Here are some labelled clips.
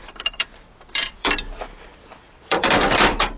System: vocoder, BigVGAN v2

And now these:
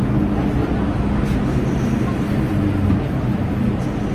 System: none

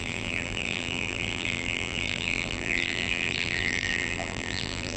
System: vocoder, BigVGAN v2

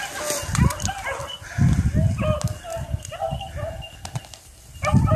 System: none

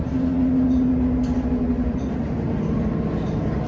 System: none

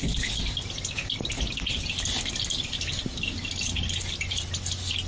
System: none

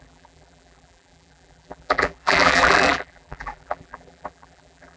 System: vocoder, BigVGAN v2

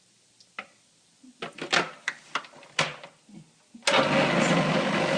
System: none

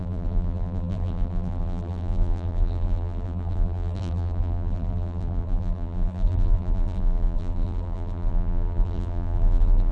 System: vocoder, BigVGAN v2